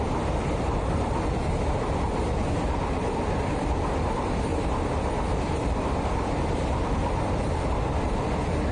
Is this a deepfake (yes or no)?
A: no